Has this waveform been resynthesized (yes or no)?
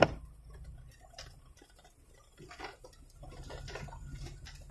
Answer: no